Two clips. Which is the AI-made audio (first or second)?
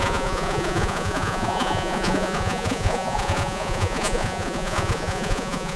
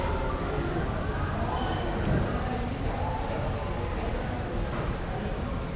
first